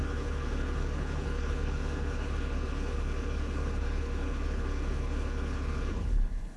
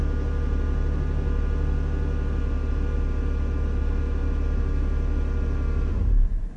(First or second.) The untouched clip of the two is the second